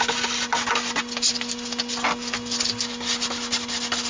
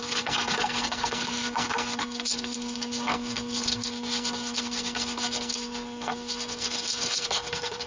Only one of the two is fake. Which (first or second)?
second